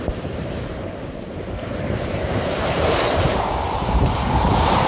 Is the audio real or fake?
fake